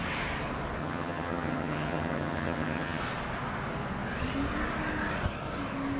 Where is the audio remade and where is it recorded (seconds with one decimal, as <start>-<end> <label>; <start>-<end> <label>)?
0.0-0.8 recorded; 0.8-3.0 remade; 3.0-6.0 recorded